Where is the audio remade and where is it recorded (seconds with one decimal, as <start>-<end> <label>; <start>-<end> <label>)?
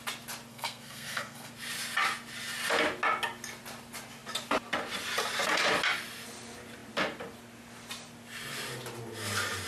0.0-0.5 recorded; 0.5-1.5 remade; 1.5-9.7 recorded